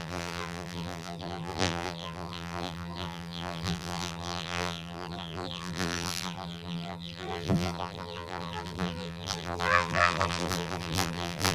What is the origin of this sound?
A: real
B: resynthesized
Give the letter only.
B